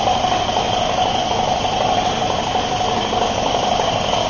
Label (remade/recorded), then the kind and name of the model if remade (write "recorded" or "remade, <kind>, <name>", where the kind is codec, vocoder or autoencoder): recorded